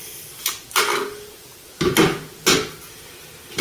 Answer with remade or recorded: recorded